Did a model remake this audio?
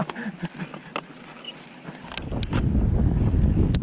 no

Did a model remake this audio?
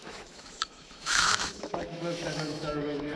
yes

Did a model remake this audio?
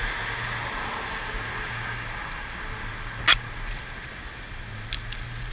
no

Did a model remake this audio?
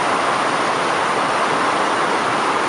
no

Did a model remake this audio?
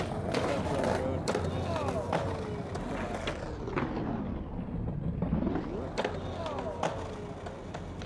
no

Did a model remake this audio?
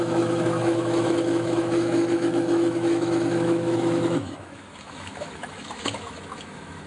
yes